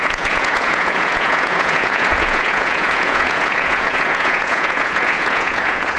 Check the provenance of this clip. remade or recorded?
remade